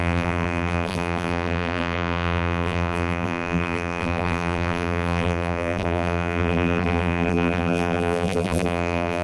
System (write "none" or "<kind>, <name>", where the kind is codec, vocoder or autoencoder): vocoder, BigVGAN v2